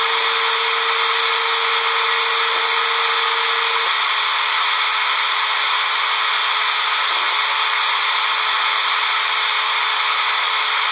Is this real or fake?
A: real